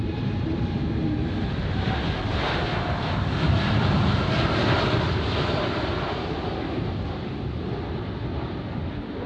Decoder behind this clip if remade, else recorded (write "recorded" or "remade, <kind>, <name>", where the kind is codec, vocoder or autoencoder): recorded